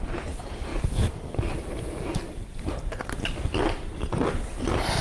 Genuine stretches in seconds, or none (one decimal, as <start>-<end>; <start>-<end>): 0.0-0.7; 2.7-3.5; 4.1-5.0